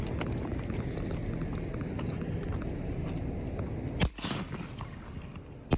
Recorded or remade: recorded